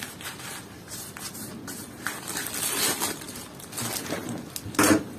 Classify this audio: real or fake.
real